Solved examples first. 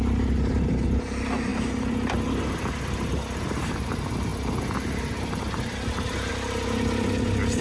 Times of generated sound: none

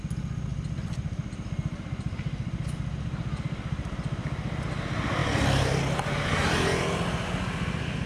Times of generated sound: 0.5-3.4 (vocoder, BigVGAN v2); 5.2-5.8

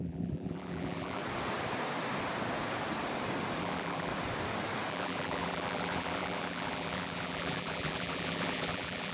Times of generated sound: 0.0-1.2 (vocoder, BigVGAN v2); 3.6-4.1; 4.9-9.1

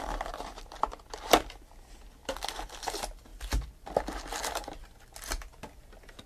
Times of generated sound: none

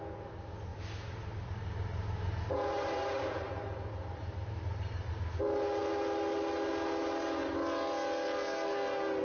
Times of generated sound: 0.7-5.1 (vocoder, BigVGAN v2)

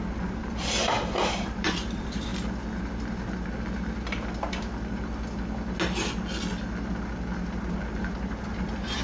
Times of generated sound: 0.0-2.3 (vocoder, BigVGAN v2); 7.5-9.0